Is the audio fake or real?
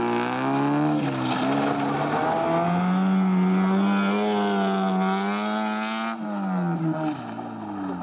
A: real